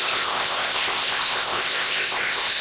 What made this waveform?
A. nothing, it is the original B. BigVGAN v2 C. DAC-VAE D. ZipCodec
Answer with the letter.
D